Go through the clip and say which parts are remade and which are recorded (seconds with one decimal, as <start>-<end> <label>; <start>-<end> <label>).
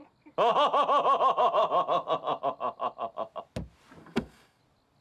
0.0-4.0 recorded; 4.0-4.6 remade; 4.6-5.0 recorded